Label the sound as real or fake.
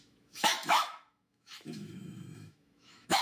fake